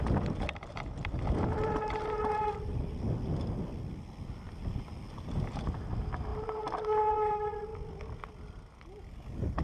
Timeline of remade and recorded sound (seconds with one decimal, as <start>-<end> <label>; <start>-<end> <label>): 0.0-9.6 recorded